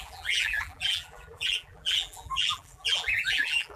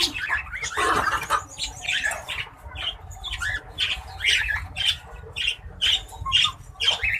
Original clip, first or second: second